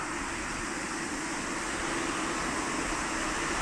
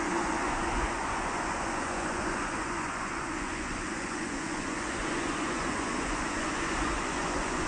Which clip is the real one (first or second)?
first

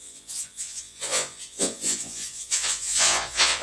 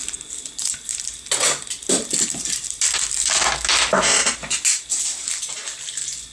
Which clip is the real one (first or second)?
second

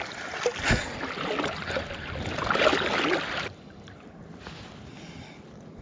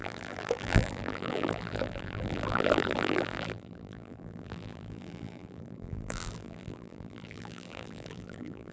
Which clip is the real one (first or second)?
first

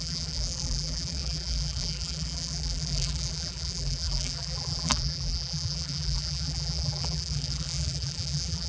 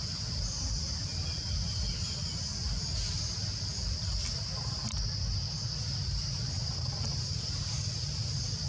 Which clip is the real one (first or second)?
second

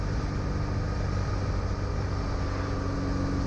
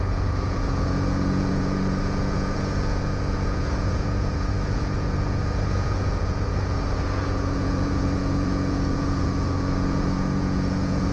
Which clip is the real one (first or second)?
first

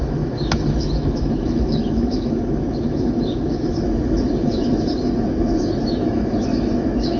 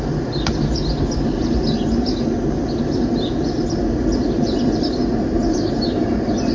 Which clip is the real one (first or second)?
second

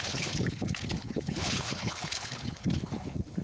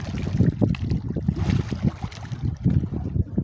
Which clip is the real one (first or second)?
second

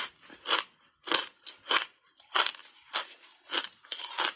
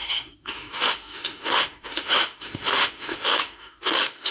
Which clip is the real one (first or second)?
first